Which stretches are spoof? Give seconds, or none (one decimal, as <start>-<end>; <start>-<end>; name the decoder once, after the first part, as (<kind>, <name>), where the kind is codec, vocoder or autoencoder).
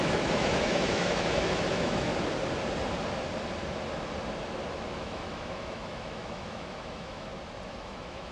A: 0.0-2.1 (autoencoder, DAC-VAE); 4.9-7.3; 7.8-8.3